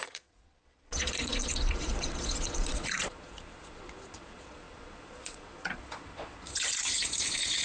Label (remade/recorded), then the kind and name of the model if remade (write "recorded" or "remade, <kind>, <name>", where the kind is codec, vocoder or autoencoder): remade, vocoder, Vocos